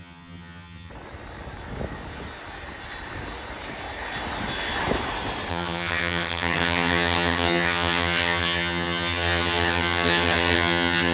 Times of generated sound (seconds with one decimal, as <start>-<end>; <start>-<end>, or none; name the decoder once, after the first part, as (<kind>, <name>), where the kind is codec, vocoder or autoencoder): 0.0-0.9 (vocoder, HiFi-GAN); 5.5-11.1